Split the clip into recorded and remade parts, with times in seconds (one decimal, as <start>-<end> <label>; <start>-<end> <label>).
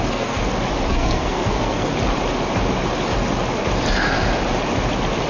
0.0-0.4 remade; 0.4-0.9 recorded; 0.9-1.9 remade; 1.9-5.3 recorded